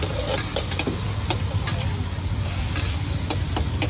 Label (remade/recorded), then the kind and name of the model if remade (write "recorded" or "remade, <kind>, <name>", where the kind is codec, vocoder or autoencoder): recorded